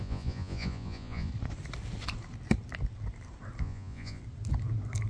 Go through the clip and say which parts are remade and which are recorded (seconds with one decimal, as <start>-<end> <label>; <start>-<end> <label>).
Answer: 0.0-1.3 remade; 1.3-3.6 recorded; 3.6-4.2 remade; 4.2-5.1 recorded

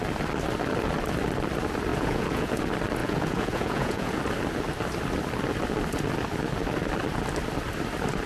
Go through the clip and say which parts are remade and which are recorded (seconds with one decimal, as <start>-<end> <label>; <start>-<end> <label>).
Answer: 0.0-1.9 recorded; 1.9-2.6 remade; 2.6-3.0 recorded; 3.0-4.2 remade; 4.2-8.3 recorded